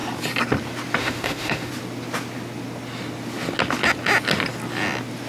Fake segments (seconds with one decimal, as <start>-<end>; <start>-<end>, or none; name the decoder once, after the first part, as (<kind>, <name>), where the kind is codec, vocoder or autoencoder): 1.0-1.7 (autoencoder, DAC-VAE)